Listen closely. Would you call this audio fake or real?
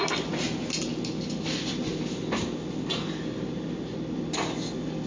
real